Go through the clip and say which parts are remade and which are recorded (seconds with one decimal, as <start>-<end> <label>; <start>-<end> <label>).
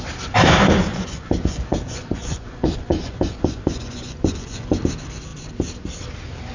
0.0-0.9 recorded; 0.9-4.8 remade; 4.8-6.5 recorded